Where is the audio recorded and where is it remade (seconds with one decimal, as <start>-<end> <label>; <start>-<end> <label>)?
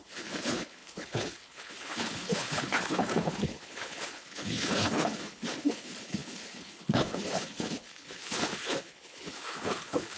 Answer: 0.0-10.2 remade